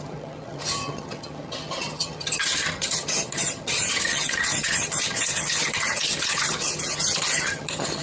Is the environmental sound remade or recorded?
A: remade